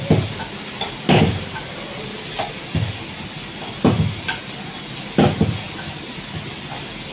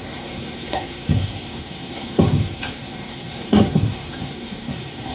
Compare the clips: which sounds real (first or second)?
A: first